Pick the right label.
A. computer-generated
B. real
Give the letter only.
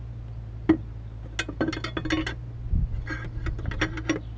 B